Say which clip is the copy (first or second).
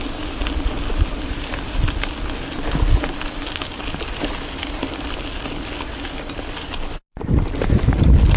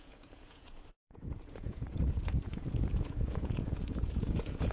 second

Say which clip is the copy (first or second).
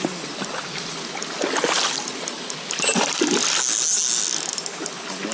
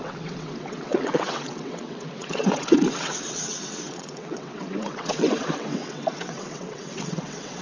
second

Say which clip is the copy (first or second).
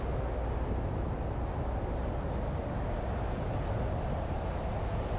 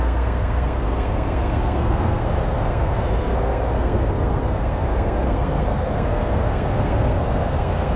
second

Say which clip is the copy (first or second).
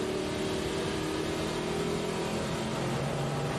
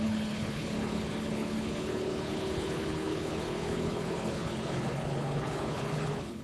second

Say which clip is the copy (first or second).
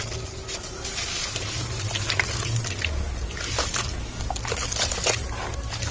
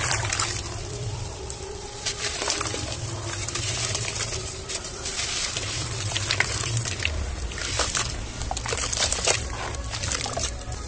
second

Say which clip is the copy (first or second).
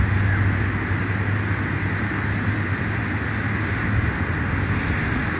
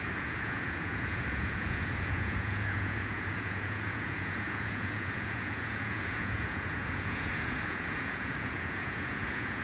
second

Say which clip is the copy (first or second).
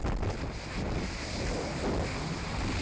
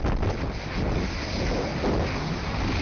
first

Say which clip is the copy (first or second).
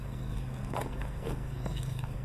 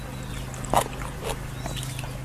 first